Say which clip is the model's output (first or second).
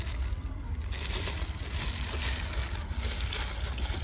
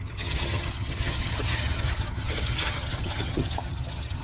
second